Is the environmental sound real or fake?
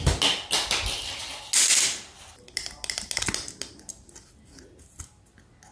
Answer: real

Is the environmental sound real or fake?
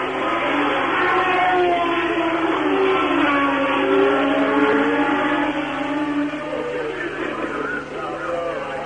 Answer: real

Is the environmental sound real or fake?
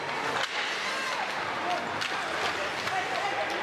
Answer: real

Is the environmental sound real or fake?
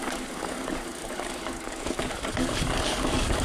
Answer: fake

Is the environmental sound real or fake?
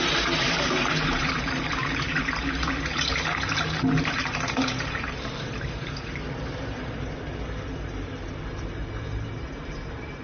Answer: fake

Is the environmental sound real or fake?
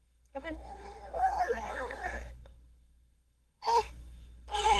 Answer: fake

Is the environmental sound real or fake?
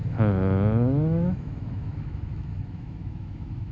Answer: fake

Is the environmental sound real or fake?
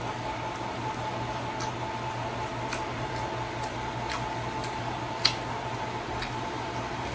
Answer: real